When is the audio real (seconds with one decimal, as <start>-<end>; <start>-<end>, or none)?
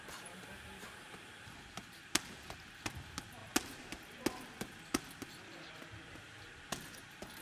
0.0-7.4